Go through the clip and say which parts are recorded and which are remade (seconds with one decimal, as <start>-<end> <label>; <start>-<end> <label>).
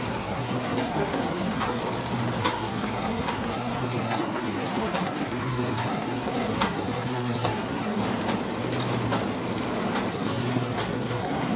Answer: 0.0-1.8 remade; 1.8-2.4 recorded; 2.4-8.0 remade; 8.0-10.1 recorded; 10.1-11.6 remade